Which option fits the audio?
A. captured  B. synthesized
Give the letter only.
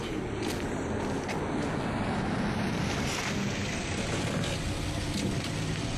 A